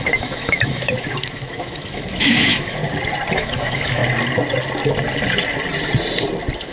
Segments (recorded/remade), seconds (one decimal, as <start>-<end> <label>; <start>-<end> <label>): 0.0-2.8 remade; 2.8-3.3 recorded; 3.3-4.0 remade; 4.0-6.7 recorded